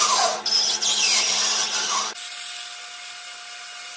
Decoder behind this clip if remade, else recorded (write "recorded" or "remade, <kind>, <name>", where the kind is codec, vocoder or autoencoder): recorded